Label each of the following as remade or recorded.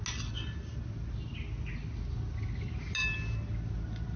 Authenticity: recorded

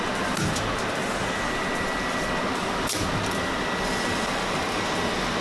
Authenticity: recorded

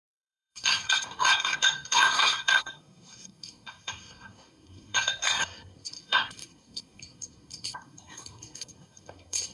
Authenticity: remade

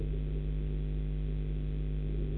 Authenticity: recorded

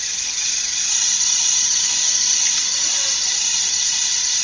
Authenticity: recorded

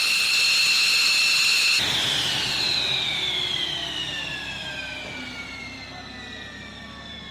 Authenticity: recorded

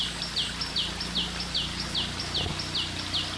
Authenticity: recorded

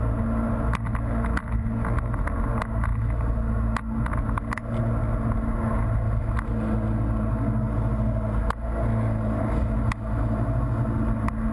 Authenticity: recorded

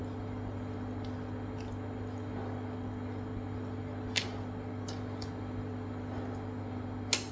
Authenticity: recorded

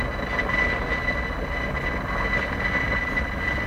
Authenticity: recorded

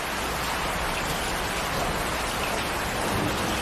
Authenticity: recorded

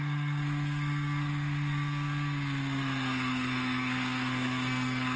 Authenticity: remade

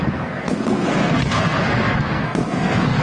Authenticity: remade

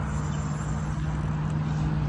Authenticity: recorded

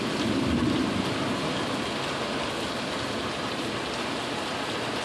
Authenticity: recorded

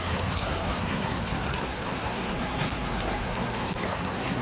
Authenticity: remade